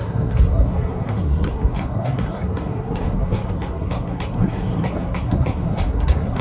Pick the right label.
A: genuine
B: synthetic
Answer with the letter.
B